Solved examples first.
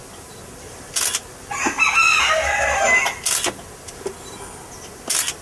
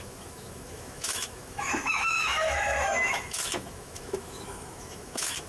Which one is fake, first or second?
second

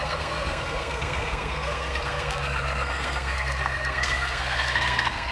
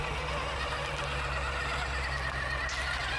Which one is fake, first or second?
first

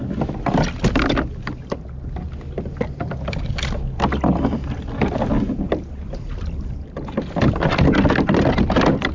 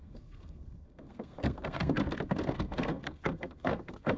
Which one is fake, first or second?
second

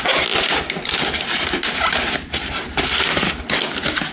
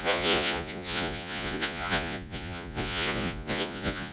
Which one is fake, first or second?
second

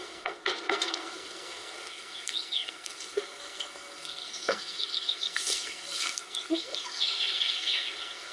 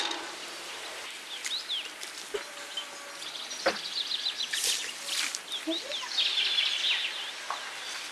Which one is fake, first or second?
first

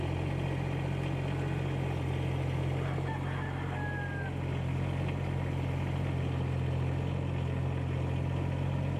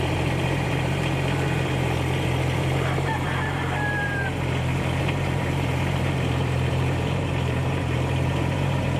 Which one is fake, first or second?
second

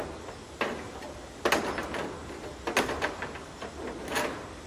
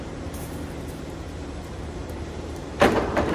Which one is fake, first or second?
second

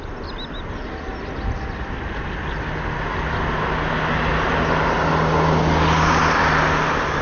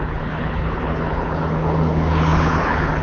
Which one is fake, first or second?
second